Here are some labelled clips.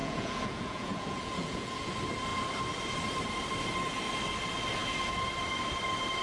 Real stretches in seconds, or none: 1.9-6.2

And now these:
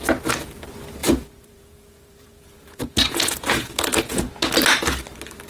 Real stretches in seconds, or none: 0.0-1.0; 4.3-5.5

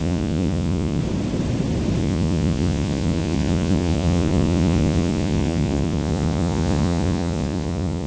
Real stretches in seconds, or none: 1.0-2.0

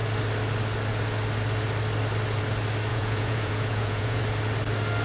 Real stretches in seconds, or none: 0.0-2.9; 4.2-5.0